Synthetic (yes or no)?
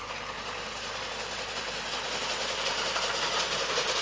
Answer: no